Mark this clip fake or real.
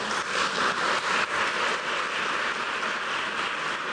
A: fake